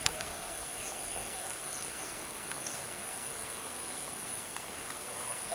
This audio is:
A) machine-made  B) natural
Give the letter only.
A